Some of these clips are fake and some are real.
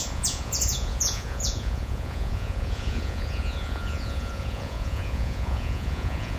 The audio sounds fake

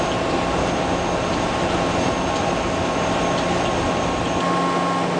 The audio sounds real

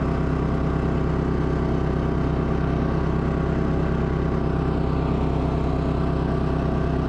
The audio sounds real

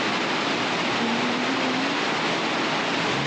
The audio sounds real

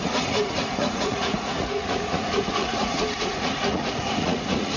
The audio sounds fake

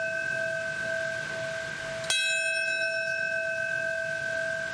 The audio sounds real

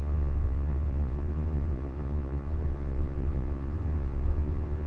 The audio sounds fake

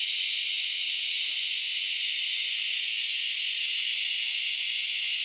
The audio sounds fake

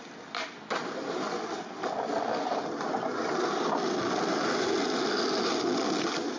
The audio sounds real